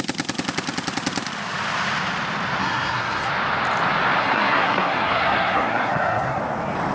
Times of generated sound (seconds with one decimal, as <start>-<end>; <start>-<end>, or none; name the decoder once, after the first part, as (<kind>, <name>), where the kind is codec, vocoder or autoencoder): 2.6-3.3 (codec, SNAC); 4.2-6.4